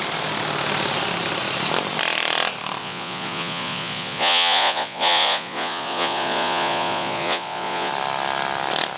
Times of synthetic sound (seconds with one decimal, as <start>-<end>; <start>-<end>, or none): 2.8-7.9